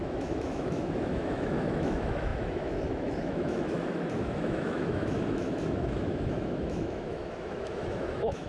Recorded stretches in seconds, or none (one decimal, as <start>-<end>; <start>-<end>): none